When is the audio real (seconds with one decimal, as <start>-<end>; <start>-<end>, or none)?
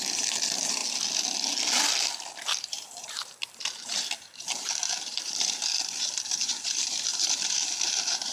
0.8-2.6